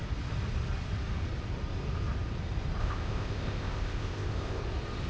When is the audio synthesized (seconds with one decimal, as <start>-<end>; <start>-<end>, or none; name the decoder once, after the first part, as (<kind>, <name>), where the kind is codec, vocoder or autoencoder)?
2.8-4.6 (codec, ZipCodec)